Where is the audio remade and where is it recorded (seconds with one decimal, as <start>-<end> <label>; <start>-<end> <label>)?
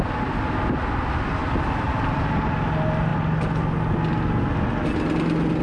0.0-1.4 recorded; 1.4-2.2 remade; 2.2-5.6 recorded